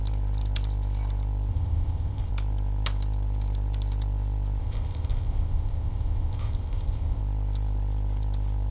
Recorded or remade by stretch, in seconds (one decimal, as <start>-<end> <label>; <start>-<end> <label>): 0.0-1.5 recorded; 1.5-2.3 remade; 2.3-4.6 recorded; 4.6-7.2 remade; 7.2-8.7 recorded